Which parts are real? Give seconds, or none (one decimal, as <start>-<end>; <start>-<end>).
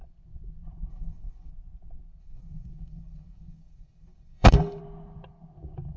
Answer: 0.0-0.9; 1.5-2.2; 4.8-6.0